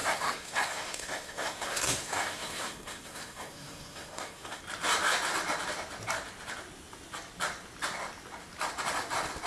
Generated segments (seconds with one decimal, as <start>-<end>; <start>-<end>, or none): 0.0-4.6